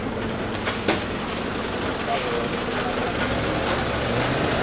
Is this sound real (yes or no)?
yes